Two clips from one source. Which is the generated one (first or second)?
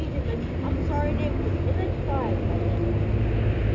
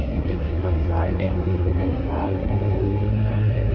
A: second